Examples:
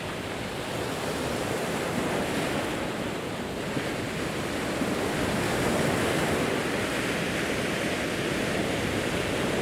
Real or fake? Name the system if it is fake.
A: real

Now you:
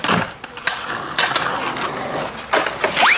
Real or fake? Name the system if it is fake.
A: real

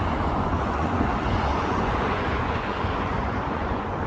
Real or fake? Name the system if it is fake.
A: fake, vocoder, Vocos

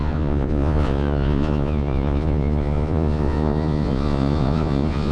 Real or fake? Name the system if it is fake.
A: fake, vocoder, Vocos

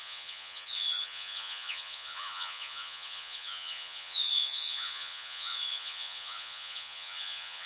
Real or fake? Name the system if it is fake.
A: fake, vocoder, Vocos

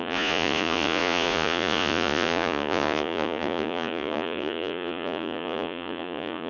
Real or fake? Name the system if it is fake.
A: fake, vocoder, Vocos